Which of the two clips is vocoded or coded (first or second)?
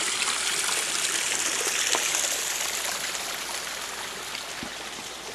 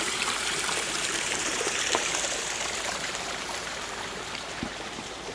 second